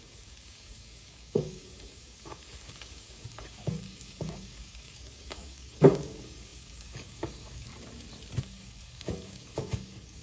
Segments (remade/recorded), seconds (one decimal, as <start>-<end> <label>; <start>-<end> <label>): 0.0-7.7 remade; 7.7-8.4 recorded; 8.4-10.2 remade